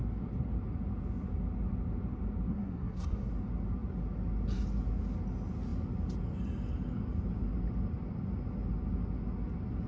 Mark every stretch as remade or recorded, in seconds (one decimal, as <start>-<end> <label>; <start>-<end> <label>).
0.0-2.5 recorded; 2.5-3.3 remade; 3.3-9.9 recorded

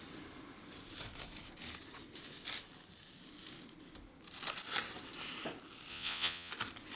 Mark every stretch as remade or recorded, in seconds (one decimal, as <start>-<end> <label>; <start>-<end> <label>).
0.0-5.9 recorded; 5.9-6.5 remade; 6.5-7.0 recorded

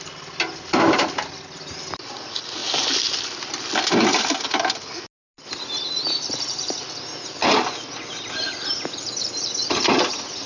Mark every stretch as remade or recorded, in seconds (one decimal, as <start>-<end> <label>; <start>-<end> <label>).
0.0-10.5 recorded

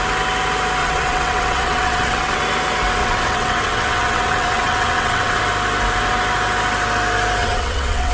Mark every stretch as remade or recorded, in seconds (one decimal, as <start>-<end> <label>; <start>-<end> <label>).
0.0-0.8 recorded; 0.8-2.4 remade; 2.4-3.0 recorded; 3.0-5.4 remade; 5.4-7.4 recorded; 7.4-8.1 remade